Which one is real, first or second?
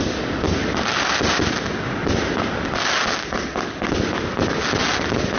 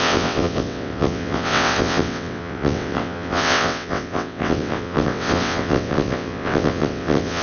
first